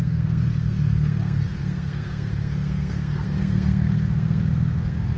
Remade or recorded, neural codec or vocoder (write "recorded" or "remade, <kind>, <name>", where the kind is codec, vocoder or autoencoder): remade, codec, SNAC